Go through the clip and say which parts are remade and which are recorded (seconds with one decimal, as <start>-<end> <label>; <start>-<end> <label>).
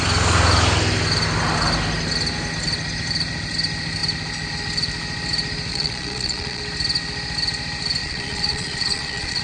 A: 0.0-5.7 recorded; 5.7-6.6 remade; 6.6-8.0 recorded; 8.0-9.4 remade